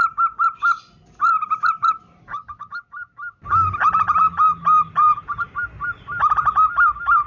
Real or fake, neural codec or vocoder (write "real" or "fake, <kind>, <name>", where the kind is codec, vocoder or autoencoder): real